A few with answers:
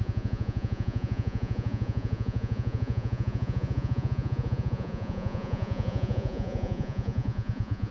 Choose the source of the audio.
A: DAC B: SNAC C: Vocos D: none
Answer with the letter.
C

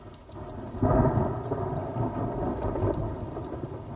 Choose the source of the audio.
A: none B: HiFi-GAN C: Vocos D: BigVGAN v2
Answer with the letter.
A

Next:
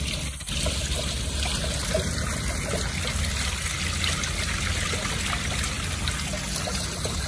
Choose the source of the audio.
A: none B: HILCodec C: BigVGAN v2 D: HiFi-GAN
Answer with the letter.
A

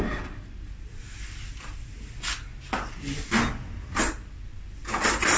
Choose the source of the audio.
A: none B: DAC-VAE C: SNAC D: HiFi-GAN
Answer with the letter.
A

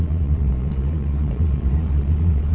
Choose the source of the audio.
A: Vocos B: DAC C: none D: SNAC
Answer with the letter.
A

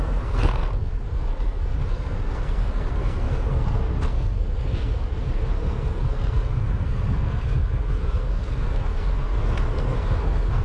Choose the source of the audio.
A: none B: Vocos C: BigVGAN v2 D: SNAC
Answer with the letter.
D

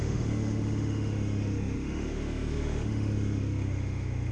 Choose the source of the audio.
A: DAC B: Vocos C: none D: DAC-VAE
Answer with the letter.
D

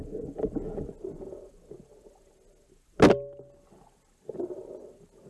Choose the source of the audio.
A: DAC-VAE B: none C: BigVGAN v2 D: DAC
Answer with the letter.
B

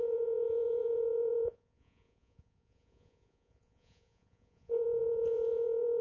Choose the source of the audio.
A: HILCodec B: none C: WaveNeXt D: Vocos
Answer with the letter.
D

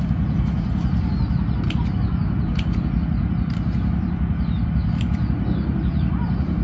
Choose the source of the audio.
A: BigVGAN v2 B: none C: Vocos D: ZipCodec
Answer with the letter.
B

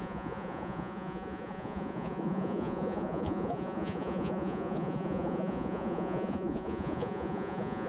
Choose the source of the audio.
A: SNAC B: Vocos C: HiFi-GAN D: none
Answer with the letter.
B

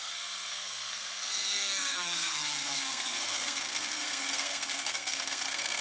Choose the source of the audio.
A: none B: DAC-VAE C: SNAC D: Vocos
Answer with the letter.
C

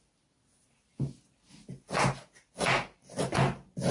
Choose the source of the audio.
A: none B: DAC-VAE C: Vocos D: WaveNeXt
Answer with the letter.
A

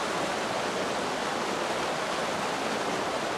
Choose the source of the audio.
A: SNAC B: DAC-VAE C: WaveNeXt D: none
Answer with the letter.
D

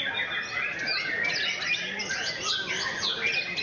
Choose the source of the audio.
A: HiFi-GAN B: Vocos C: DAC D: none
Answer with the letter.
D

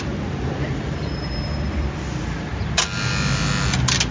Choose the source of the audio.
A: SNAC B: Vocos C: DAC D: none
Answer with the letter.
D